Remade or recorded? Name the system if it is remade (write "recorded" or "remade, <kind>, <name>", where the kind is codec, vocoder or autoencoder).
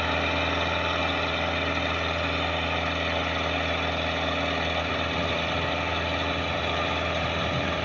recorded